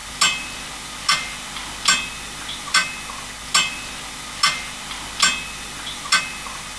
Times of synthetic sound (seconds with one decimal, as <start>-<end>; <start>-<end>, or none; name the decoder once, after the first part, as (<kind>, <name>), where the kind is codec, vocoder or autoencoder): none